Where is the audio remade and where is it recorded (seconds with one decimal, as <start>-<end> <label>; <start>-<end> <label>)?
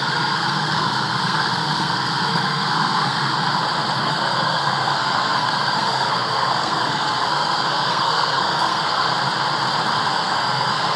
0.0-3.3 remade; 3.3-4.0 recorded; 4.0-9.1 remade; 9.1-10.1 recorded; 10.1-11.0 remade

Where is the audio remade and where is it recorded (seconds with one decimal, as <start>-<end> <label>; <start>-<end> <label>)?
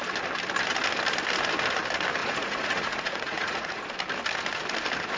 0.0-2.2 recorded; 2.2-3.8 remade; 3.8-5.2 recorded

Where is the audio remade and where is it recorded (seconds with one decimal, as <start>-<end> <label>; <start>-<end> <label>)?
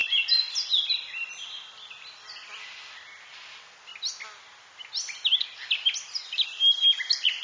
0.0-7.4 recorded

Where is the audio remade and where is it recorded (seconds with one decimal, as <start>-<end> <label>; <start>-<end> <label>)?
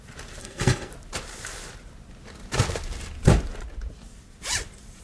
0.0-0.4 recorded; 0.4-0.9 remade; 0.9-5.0 recorded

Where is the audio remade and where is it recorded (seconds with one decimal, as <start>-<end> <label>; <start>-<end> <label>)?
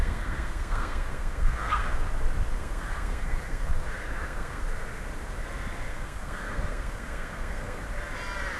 0.0-2.1 remade; 2.1-2.5 recorded; 2.5-4.6 remade; 4.6-5.9 recorded; 5.9-7.8 remade; 7.8-8.6 recorded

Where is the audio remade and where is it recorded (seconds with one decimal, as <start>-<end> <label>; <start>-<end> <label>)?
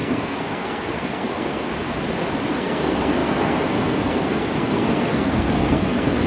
0.0-1.7 remade; 1.7-2.5 recorded; 2.5-6.3 remade